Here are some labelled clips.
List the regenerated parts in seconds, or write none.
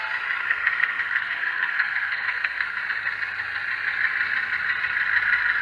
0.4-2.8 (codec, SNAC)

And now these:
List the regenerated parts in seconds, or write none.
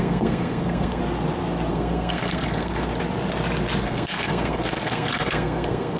0.0-1.0 (codec, SNAC); 1.7-2.9; 3.8-6.0